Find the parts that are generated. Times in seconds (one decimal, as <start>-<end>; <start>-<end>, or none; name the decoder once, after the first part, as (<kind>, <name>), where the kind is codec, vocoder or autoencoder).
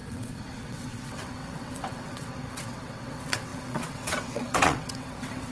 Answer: 0.0-5.5 (vocoder, WaveNeXt)